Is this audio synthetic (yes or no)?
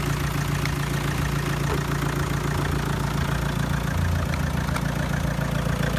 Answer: no